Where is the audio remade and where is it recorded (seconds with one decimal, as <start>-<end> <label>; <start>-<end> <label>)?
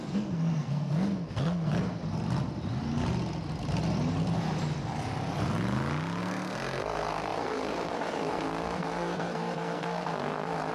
0.0-2.0 remade; 2.0-6.2 recorded; 6.2-10.7 remade